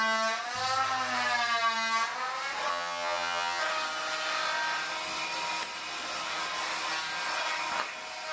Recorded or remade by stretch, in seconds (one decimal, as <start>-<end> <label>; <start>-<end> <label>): 0.0-2.7 recorded; 2.7-3.6 remade; 3.6-8.3 recorded